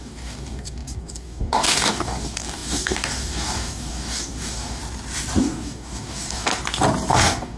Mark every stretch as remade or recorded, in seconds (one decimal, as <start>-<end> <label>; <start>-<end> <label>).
0.0-4.8 remade; 4.8-5.4 recorded; 5.4-6.5 remade; 6.5-7.1 recorded; 7.1-7.6 remade

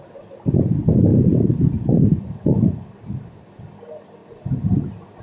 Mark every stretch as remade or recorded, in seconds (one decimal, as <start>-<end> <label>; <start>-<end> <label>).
0.0-1.1 recorded; 1.1-3.6 remade; 3.6-5.2 recorded